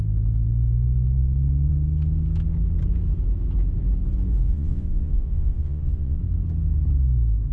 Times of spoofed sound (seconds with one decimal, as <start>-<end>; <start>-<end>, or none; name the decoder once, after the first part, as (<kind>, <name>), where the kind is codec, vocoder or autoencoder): 4.4-6.2 (vocoder, Vocos)